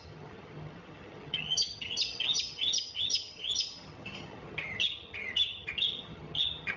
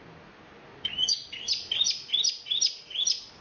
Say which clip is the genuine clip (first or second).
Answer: second